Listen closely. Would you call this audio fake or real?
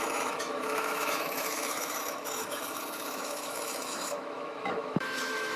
fake